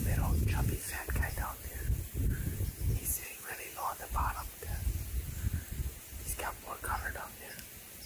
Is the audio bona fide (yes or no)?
yes